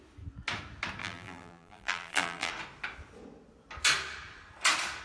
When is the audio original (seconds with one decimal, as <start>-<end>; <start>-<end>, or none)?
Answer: 0.0-1.0; 2.5-5.0